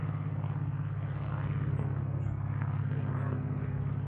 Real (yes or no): no